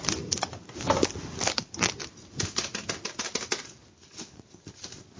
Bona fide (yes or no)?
yes